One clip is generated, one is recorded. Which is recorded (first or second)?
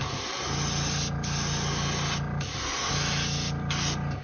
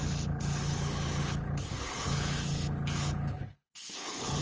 first